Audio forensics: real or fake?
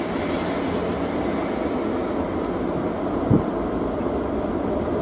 real